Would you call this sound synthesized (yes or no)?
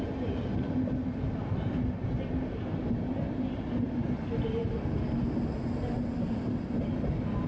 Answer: no